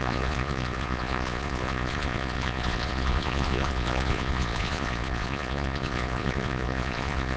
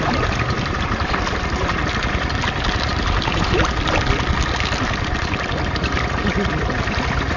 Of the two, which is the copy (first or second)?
first